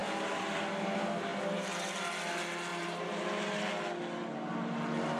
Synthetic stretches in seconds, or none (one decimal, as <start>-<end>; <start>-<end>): 0.0-0.5; 1.3-1.8; 2.7-3.7